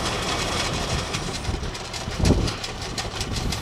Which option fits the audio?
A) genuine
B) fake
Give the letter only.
B